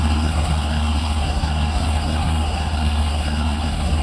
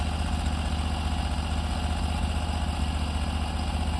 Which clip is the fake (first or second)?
first